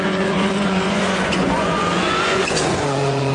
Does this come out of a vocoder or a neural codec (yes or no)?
yes